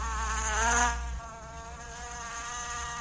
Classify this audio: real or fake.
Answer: real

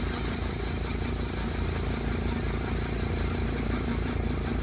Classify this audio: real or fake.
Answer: real